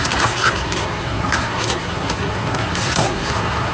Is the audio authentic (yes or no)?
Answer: no